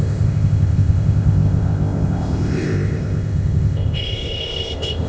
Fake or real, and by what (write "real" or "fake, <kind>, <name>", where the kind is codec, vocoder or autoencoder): fake, codec, ZipCodec